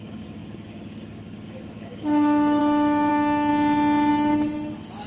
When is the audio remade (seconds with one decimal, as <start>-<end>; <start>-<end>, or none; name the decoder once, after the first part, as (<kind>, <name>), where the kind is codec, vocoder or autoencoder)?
0.0-2.6 (codec, DAC); 3.1-3.5; 4.1-5.1